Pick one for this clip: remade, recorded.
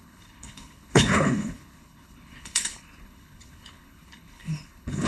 remade